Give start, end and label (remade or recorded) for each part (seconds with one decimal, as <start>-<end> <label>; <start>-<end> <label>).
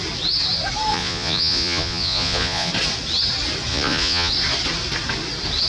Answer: 0.0-0.9 recorded; 0.9-2.7 remade; 2.7-3.7 recorded; 3.7-4.3 remade; 4.3-5.7 recorded